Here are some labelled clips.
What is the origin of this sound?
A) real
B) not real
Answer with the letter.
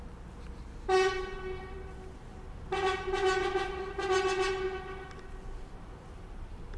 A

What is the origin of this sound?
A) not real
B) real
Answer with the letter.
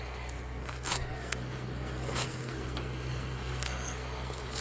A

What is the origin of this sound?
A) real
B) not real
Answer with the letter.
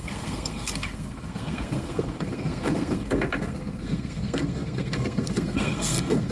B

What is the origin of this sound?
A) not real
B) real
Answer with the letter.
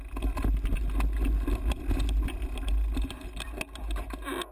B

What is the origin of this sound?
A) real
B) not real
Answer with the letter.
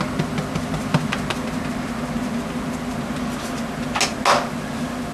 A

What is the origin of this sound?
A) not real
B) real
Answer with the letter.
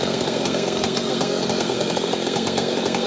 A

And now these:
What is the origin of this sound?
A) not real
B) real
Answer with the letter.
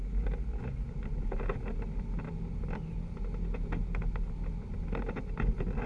B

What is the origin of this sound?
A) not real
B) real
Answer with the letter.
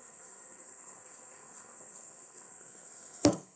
A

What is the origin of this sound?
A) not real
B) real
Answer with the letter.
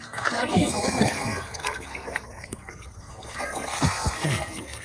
A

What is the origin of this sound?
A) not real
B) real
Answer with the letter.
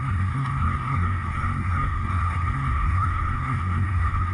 A